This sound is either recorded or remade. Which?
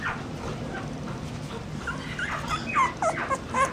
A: recorded